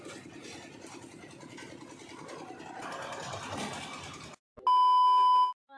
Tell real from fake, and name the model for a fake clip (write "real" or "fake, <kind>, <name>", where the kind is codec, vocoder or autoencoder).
real